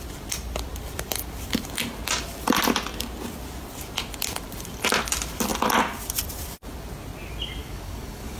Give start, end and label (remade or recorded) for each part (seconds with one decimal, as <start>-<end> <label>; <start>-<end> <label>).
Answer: 0.0-7.6 recorded; 7.6-8.4 remade